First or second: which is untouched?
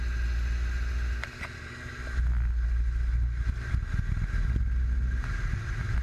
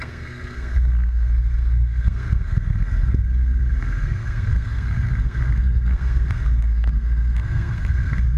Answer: first